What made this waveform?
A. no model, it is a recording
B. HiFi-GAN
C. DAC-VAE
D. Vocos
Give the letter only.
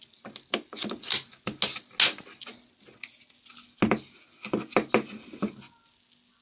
A